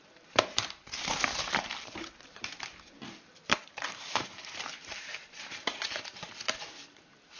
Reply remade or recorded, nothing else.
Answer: remade